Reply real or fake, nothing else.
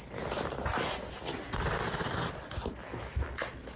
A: real